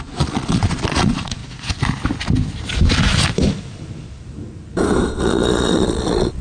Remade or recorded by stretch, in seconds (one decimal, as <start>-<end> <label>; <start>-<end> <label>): 0.0-1.4 remade; 1.4-5.2 recorded; 5.2-6.4 remade